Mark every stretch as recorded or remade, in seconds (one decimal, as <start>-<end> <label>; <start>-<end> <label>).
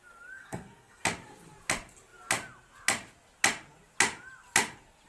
0.0-0.4 recorded; 0.4-1.0 remade; 1.0-5.1 recorded